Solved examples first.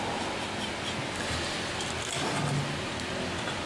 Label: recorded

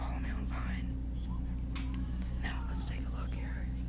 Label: recorded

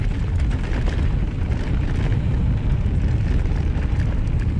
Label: recorded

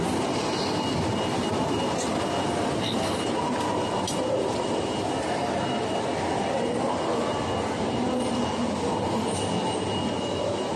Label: recorded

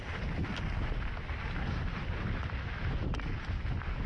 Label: recorded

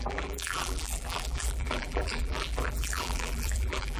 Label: remade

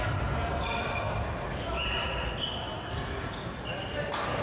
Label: recorded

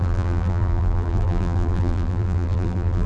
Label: remade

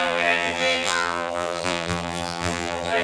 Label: remade